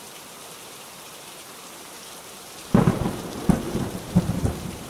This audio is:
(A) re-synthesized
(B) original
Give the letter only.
A